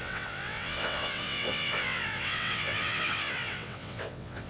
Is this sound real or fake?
fake